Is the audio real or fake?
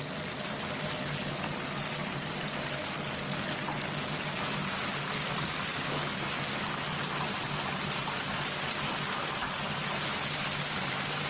real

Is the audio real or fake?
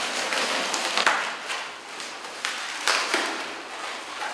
real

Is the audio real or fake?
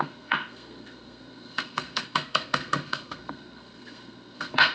fake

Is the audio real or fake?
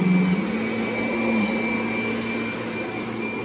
real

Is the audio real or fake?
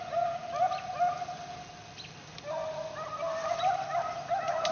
real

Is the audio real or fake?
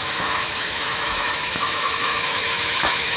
fake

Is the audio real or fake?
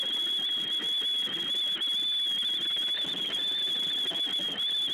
real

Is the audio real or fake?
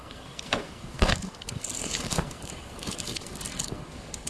fake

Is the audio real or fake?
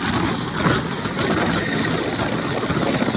real